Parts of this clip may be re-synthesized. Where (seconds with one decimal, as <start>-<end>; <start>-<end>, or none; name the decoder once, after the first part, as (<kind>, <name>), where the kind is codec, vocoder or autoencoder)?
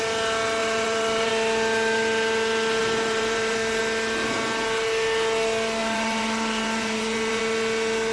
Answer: 0.6-1.3 (vocoder, BigVGAN v2); 2.8-3.8; 5.8-7.4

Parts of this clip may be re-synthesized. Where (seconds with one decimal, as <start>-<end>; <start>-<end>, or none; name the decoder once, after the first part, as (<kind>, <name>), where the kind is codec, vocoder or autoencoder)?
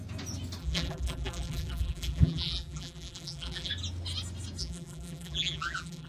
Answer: 0.6-3.7 (vocoder, BigVGAN v2); 4.6-6.1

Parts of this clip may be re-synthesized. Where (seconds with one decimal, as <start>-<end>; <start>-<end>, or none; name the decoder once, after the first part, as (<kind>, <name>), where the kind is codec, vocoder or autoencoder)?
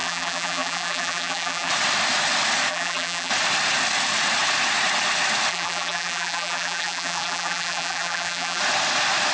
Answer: 0.0-1.7 (vocoder, BigVGAN v2); 2.7-3.3; 5.5-8.6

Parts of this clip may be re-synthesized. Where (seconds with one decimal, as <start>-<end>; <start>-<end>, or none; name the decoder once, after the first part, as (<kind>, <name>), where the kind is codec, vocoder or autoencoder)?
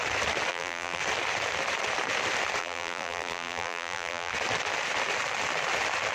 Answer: 0.5-1.0 (vocoder, BigVGAN v2); 2.6-4.3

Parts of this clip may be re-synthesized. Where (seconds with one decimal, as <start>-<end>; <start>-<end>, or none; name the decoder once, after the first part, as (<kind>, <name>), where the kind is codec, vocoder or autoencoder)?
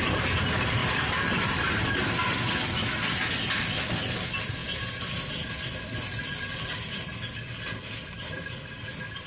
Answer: 0.8-1.6 (vocoder, BigVGAN v2); 4.6-5.2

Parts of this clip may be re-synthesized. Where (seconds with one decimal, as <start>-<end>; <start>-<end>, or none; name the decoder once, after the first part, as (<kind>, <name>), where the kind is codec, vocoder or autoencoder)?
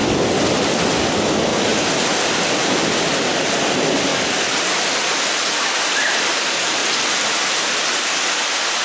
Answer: 0.0-0.5 (vocoder, BigVGAN v2); 4.1-5.0; 6.8-8.4